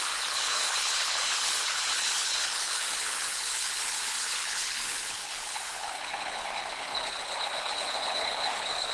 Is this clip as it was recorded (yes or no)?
no